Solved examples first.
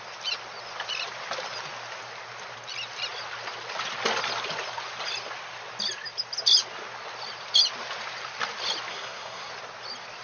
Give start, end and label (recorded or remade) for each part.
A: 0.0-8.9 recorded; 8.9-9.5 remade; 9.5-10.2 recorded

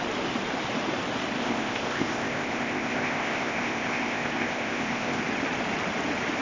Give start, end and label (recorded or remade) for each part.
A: 0.0-1.4 recorded; 1.4-5.2 remade; 5.2-6.4 recorded

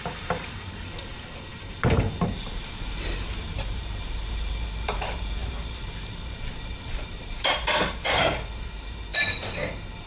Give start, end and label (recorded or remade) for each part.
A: 0.0-10.1 remade